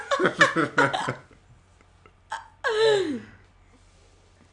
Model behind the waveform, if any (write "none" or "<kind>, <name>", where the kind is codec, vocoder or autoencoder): none